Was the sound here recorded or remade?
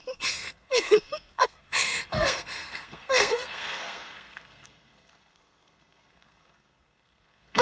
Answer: remade